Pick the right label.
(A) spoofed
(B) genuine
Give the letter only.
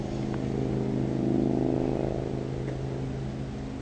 B